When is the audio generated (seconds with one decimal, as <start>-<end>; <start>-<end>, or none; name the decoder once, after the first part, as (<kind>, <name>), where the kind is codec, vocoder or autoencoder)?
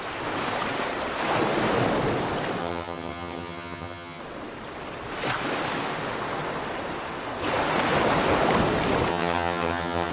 2.6-4.2 (vocoder, HiFi-GAN); 9.1-10.1